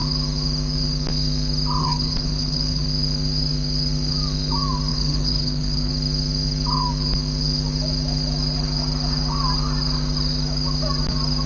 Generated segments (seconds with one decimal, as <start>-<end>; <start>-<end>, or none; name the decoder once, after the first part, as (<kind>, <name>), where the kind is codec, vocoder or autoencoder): 1.8-2.8 (codec, HILCodec); 4.9-5.9